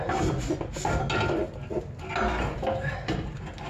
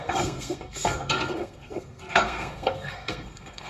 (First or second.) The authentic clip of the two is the first